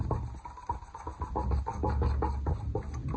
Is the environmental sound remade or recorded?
recorded